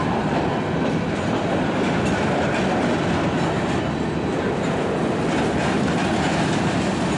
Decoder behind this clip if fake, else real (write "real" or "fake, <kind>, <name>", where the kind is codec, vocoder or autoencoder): real